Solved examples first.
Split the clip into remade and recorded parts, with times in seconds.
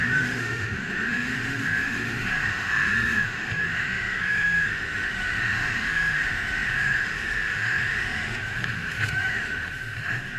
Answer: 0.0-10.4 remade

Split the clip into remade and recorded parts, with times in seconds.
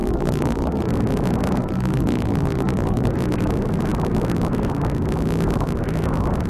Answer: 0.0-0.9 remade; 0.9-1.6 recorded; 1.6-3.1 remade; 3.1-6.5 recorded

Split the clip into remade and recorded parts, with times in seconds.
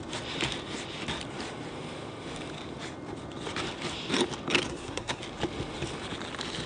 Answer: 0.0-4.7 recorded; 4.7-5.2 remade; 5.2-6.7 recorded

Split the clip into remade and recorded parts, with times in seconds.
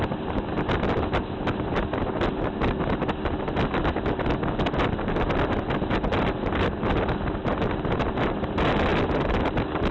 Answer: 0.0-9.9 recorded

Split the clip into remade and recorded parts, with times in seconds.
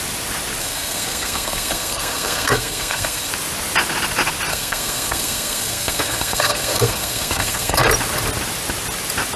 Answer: 0.0-0.6 recorded; 0.6-3.3 remade; 3.3-4.5 recorded; 4.5-7.8 remade; 7.8-9.4 recorded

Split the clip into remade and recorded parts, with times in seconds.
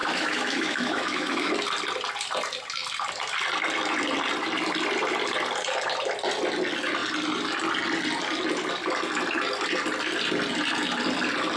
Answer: 0.0-1.5 remade; 1.5-11.6 recorded